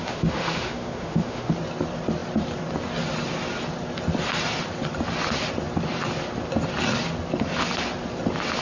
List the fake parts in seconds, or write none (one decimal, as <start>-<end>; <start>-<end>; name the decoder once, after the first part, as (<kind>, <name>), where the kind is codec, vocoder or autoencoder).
0.0-1.5 (autoencoder, DAC-VAE)